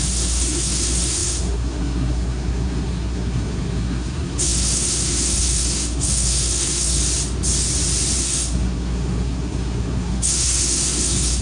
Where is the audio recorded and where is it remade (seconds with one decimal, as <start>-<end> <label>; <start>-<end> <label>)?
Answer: 0.0-7.0 remade; 7.0-8.2 recorded; 8.2-11.4 remade